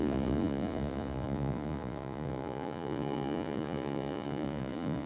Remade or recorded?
remade